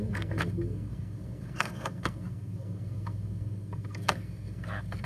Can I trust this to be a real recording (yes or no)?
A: no